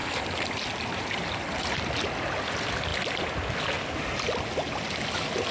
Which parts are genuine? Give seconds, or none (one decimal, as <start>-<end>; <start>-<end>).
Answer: 0.0-5.5